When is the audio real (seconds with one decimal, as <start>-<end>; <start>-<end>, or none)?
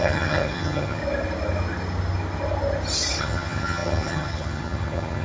1.0-3.2